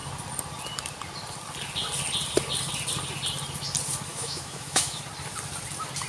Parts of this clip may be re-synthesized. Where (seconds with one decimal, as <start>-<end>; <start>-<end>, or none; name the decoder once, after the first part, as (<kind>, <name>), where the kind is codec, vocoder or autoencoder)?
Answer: 4.1-5.0 (autoencoder, DAC-VAE)